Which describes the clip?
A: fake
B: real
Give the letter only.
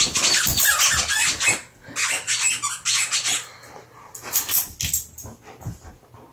B